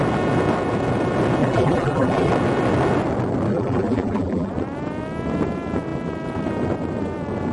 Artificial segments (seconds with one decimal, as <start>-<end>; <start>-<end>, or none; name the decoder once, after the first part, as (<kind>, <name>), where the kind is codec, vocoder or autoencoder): 1.4-2.3 (vocoder, BigVGAN v2); 3.5-4.5